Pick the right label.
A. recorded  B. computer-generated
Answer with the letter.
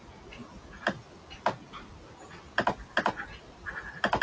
A